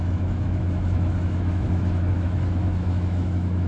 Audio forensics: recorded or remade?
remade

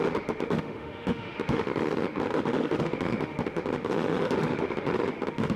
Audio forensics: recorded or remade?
remade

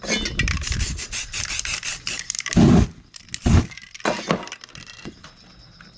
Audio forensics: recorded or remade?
recorded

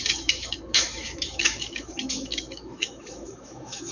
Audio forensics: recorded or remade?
remade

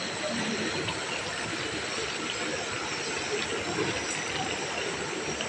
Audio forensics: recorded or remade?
recorded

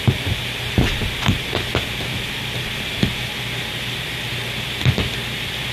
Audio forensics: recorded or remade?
recorded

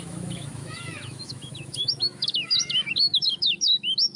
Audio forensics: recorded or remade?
remade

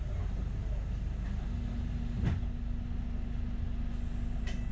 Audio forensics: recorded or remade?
recorded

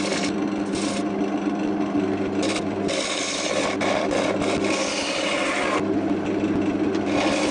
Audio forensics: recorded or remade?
recorded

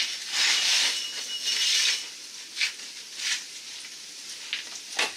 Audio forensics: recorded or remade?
recorded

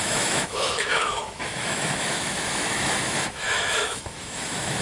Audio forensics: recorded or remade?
remade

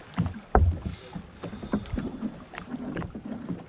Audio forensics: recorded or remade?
recorded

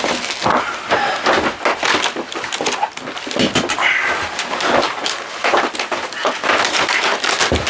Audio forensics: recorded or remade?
recorded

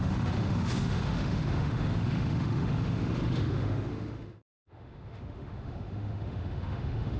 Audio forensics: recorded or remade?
remade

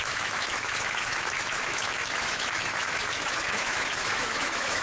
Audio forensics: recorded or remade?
remade